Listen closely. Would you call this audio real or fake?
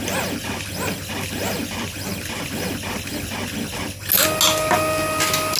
real